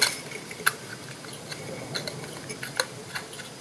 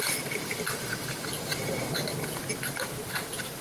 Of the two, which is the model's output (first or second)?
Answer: second